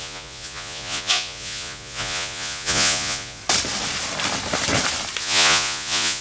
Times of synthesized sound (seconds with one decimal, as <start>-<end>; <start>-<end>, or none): 0.0-3.4; 5.2-6.2